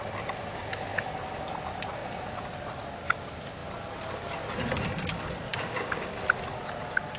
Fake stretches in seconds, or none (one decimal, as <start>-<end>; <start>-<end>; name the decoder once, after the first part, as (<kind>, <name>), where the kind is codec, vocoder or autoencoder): 5.5-6.1 (codec, DAC)